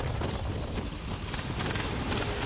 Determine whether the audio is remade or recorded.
recorded